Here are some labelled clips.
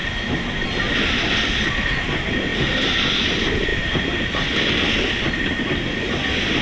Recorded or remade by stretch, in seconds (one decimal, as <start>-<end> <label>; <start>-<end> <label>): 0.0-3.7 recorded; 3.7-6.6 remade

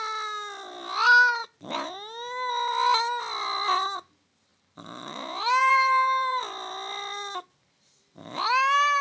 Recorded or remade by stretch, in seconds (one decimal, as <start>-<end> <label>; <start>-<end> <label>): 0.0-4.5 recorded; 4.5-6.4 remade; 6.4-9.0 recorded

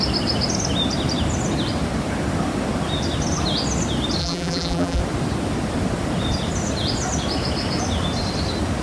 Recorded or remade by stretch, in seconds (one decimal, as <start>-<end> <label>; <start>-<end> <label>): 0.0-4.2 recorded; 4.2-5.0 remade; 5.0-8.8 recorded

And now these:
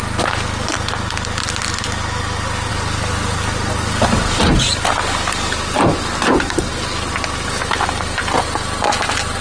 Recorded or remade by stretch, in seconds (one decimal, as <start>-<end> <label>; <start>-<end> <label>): 0.0-2.7 recorded; 2.7-4.4 remade; 4.4-9.4 recorded